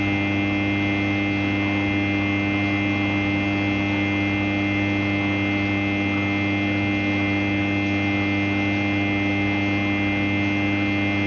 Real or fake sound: real